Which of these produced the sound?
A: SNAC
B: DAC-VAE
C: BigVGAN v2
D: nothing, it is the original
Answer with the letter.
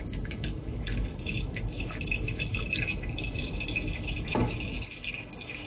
B